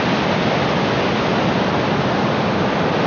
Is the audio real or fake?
real